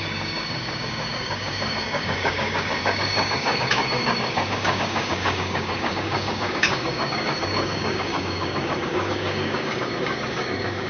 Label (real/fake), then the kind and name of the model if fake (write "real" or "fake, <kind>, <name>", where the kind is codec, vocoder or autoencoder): fake, codec, DAC